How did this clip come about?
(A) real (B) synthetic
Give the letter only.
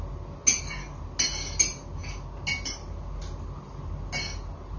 A